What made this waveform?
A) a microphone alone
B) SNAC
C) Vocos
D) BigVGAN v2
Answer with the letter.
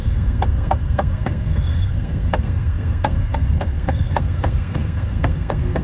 B